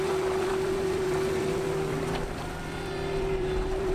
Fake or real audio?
fake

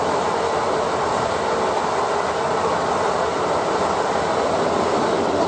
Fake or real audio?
real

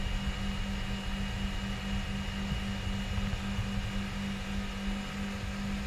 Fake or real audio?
real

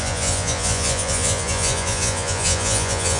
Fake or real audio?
fake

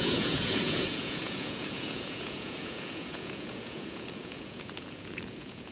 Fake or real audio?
fake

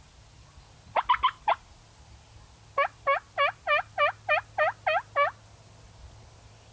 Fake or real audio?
real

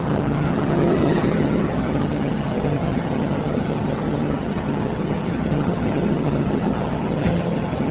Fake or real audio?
fake